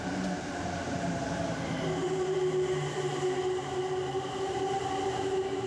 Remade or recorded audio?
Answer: remade